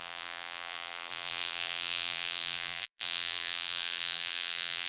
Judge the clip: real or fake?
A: fake